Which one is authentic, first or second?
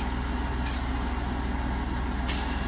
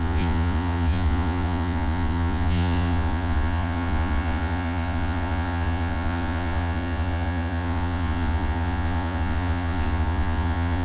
first